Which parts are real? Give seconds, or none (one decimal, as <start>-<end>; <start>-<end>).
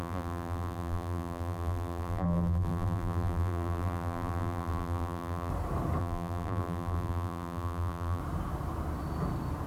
5.5-6.0; 8.2-9.7